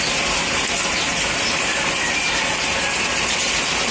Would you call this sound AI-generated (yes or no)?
no